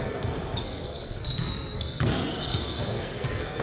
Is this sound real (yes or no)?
no